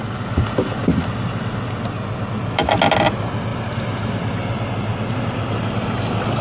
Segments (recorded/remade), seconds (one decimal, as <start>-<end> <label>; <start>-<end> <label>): 0.0-6.4 recorded